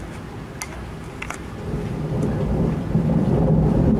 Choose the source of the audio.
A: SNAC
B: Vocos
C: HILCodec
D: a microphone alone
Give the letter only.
D